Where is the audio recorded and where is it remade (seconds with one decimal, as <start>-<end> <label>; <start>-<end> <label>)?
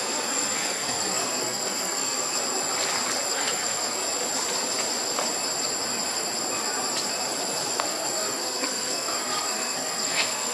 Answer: 0.0-2.4 remade; 2.4-3.3 recorded; 3.3-4.0 remade; 4.0-7.7 recorded; 7.7-10.5 remade